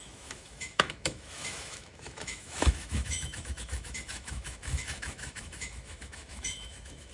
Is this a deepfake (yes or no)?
yes